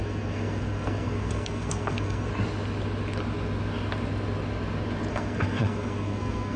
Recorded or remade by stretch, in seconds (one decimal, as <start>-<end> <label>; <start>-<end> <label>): 0.0-2.3 remade; 2.3-5.1 recorded; 5.1-6.6 remade

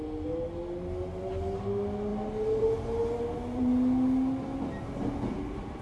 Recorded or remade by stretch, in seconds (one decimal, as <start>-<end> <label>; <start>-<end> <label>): 0.0-5.8 recorded

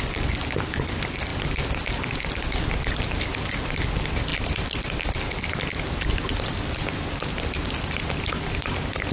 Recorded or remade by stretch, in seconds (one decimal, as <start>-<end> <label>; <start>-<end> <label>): 0.0-4.3 recorded; 4.3-5.3 remade; 5.3-9.1 recorded

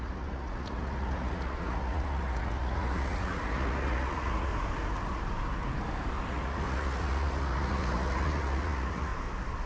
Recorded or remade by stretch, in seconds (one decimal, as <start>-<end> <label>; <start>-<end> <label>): 0.0-4.5 remade; 4.5-6.3 recorded; 6.3-9.1 remade; 9.1-9.7 recorded

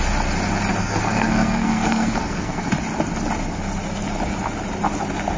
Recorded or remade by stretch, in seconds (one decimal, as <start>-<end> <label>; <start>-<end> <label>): 0.0-0.8 recorded; 0.8-2.7 remade; 2.7-5.4 recorded

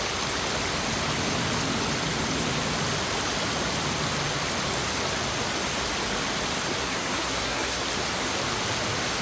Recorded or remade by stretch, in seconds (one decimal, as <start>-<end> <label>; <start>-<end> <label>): 0.0-6.8 recorded; 6.8-7.8 remade; 7.8-9.2 recorded

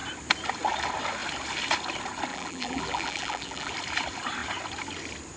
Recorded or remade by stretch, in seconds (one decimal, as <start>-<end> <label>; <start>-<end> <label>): 0.0-2.3 recorded; 2.3-3.7 remade; 3.7-5.4 recorded

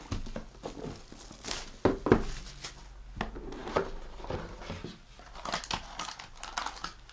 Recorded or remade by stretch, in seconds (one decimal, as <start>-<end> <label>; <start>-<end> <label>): 0.0-7.1 recorded